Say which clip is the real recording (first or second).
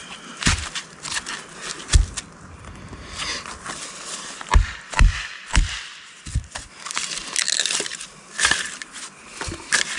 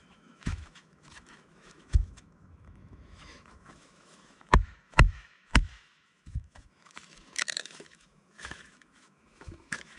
first